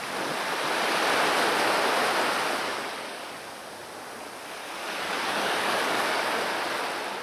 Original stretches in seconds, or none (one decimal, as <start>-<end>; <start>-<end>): 0.0-2.7; 3.3-4.6; 6.4-7.2